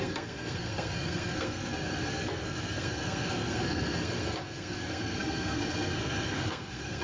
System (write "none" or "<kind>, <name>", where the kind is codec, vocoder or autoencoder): codec, SNAC